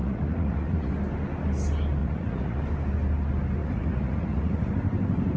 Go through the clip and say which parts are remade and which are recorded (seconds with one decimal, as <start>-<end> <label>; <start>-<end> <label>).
0.0-0.9 remade; 0.9-2.0 recorded; 2.0-2.6 remade; 2.6-3.6 recorded; 3.6-4.7 remade; 4.7-5.4 recorded